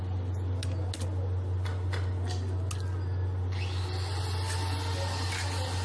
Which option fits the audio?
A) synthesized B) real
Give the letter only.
B